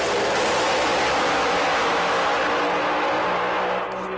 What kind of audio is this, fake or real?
real